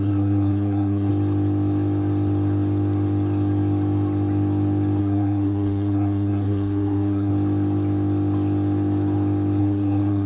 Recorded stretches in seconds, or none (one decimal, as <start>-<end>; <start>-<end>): 1.1-5.0; 7.3-9.6